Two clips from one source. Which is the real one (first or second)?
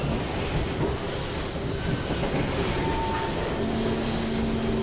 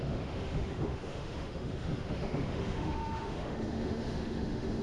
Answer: first